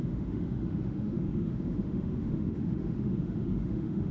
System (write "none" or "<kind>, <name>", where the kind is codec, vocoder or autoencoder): autoencoder, DAC-VAE